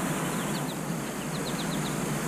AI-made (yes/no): no